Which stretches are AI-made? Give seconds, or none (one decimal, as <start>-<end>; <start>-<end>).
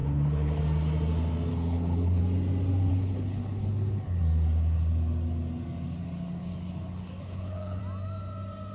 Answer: 0.0-0.6; 1.5-2.2; 2.9-4.2; 6.4-7.8